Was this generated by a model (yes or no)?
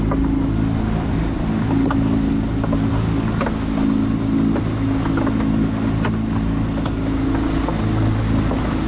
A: no